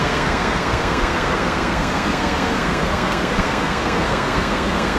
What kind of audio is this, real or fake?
fake